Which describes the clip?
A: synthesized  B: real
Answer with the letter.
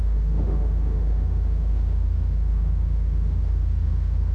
A